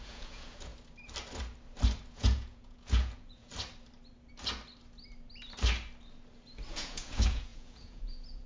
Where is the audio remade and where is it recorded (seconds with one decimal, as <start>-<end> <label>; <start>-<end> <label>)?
0.0-0.7 remade; 0.7-2.1 recorded; 2.1-3.5 remade; 3.5-6.7 recorded; 6.7-8.5 remade